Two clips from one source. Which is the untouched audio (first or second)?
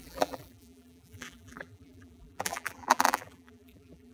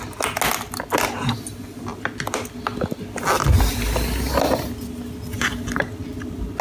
second